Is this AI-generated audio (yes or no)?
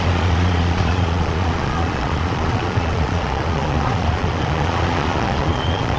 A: yes